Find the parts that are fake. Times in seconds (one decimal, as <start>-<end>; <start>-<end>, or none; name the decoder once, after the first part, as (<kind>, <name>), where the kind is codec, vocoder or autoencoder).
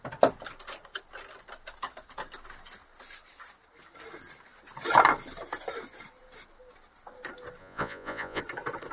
7.6-8.4 (vocoder, Vocos)